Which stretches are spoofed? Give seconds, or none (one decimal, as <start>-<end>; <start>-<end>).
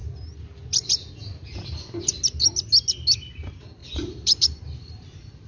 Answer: 3.8-5.5